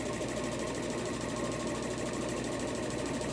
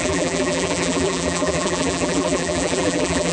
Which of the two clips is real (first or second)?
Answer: first